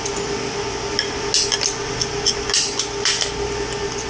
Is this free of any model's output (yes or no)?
yes